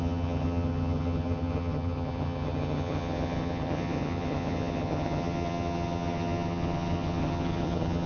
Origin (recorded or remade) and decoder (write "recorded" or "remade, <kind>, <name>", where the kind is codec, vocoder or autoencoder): remade, vocoder, HiFi-GAN